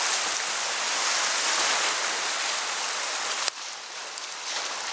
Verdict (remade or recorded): recorded